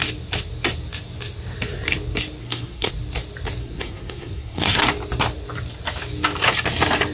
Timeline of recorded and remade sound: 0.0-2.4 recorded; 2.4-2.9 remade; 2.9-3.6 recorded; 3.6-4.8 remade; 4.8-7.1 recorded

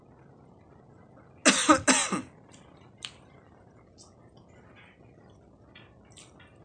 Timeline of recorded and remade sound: 0.0-6.6 recorded

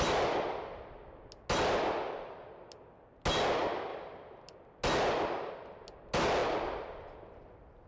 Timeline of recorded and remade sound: 0.0-7.9 recorded

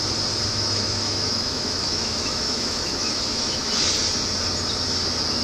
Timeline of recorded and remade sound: 0.0-0.5 recorded; 0.5-3.7 remade; 3.7-5.4 recorded

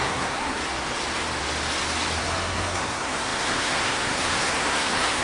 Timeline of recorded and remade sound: 0.0-0.6 remade; 0.6-2.2 recorded; 2.2-5.2 remade

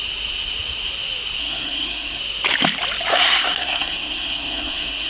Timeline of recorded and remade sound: 0.0-1.4 recorded; 1.4-2.2 remade; 2.2-3.1 recorded; 3.1-5.1 remade